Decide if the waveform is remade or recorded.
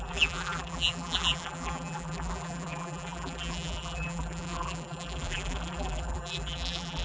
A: remade